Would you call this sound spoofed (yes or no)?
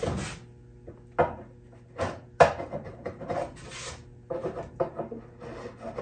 no